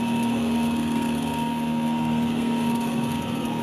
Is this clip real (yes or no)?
no